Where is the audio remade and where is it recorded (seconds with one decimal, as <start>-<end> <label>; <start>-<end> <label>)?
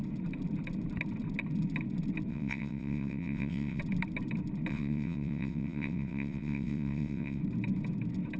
0.0-2.3 recorded; 2.3-3.8 remade; 3.8-4.7 recorded; 4.7-7.4 remade; 7.4-8.4 recorded